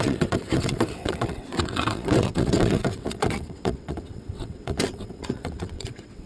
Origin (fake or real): fake